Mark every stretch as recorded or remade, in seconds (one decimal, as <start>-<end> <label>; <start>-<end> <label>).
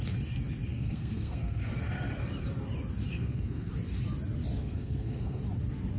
0.0-0.7 recorded; 0.7-1.7 remade; 1.7-3.1 recorded; 3.1-3.7 remade; 3.7-4.6 recorded; 4.6-5.4 remade; 5.4-6.0 recorded